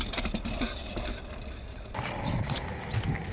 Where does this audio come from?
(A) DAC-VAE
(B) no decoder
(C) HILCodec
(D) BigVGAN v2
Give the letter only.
B